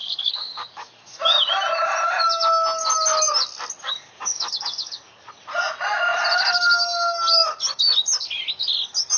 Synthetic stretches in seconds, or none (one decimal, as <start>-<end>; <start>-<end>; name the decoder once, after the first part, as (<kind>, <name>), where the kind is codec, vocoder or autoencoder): 0.0-1.2 (codec, DAC); 3.8-5.3